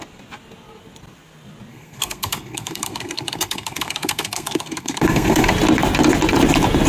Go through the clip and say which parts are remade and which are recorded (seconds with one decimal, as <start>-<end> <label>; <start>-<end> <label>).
0.0-1.7 recorded; 1.7-5.5 remade; 5.5-6.9 recorded